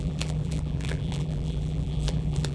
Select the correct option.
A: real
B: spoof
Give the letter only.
B